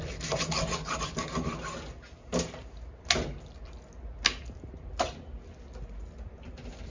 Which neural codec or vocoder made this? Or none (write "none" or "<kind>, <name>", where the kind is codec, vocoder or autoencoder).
none